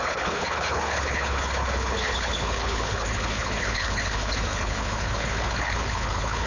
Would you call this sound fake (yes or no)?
yes